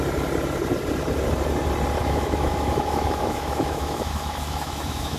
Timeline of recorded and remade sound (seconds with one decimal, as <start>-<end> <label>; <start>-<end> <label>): 0.0-2.0 recorded; 2.0-5.2 remade